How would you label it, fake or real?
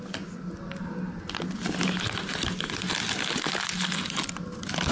real